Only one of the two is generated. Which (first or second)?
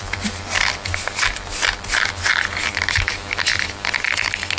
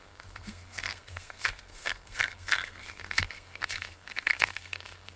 second